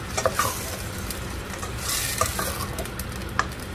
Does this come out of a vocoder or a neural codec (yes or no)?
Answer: no